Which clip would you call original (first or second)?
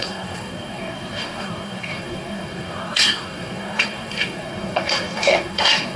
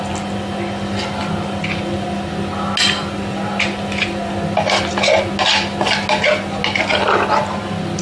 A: second